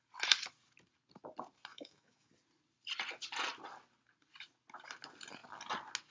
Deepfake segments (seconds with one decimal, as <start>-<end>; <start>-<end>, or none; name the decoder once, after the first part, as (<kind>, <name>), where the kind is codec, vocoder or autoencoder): 1.7-2.3 (autoencoder, DAC-VAE)